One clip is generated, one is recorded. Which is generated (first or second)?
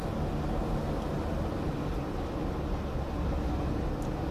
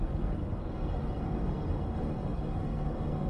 second